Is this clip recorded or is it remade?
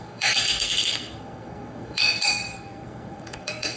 remade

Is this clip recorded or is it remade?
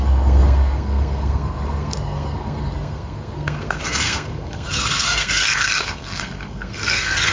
remade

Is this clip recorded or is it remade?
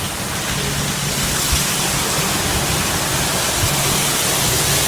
recorded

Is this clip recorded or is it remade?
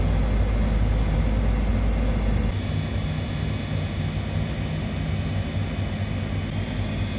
recorded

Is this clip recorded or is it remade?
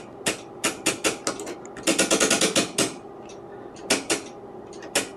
recorded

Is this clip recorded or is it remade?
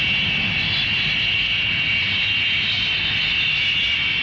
recorded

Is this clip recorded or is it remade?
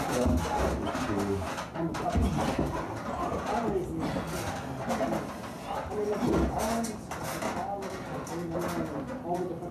recorded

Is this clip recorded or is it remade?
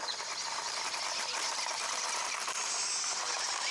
recorded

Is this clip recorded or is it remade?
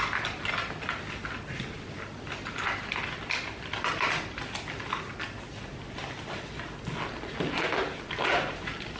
recorded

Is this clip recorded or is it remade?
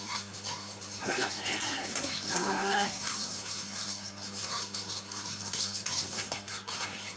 remade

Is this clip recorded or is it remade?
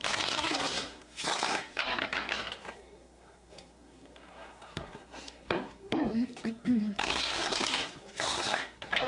remade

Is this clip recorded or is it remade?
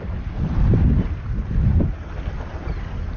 recorded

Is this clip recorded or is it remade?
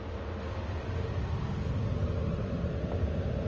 recorded